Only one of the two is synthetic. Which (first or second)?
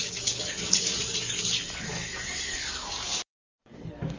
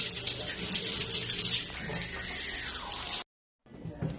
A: first